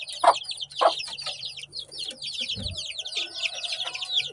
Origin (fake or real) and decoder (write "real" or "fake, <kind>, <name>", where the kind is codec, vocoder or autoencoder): real